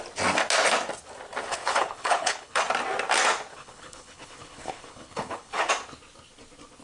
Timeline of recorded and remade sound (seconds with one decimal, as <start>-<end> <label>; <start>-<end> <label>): 0.0-1.5 recorded; 1.5-2.6 remade; 2.6-3.5 recorded; 3.5-5.7 remade; 5.7-6.8 recorded